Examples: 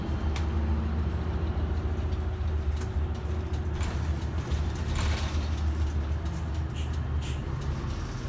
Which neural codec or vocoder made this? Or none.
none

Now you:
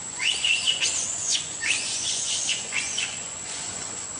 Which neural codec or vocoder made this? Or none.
vocoder, Vocos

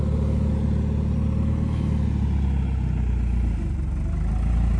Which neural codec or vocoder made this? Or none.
none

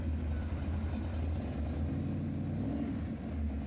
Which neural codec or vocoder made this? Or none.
none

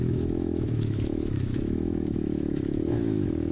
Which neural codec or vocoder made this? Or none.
autoencoder, DAC-VAE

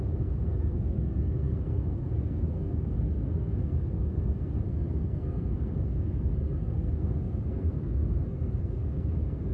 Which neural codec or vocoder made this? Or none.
codec, SNAC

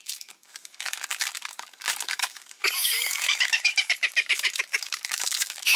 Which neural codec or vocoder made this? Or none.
codec, DAC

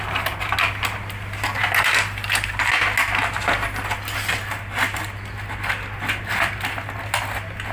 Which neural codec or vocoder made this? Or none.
none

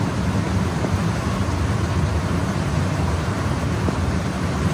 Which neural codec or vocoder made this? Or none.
vocoder, BigVGAN v2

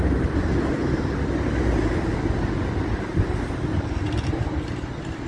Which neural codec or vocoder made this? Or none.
none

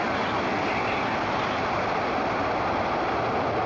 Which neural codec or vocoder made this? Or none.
none